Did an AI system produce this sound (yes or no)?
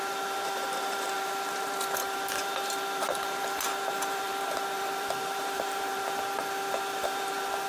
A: yes